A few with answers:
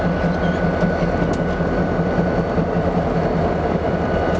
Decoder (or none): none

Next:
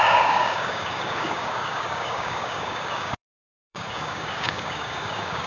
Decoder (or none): codec, DAC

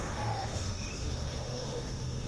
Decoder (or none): autoencoder, DAC-VAE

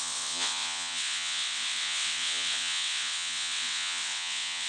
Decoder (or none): vocoder, WaveNeXt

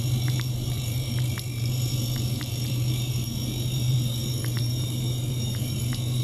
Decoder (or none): vocoder, BigVGAN v2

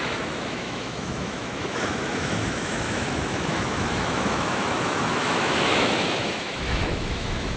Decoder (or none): autoencoder, DAC-VAE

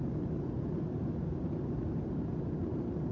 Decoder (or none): none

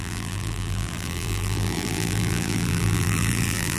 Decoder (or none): vocoder, BigVGAN v2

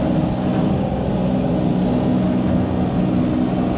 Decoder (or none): none